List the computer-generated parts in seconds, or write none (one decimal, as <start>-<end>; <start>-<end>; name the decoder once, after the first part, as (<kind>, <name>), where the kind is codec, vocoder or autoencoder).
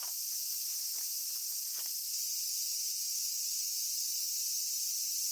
none